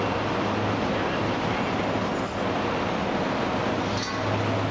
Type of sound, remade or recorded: recorded